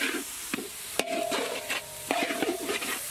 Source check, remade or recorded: remade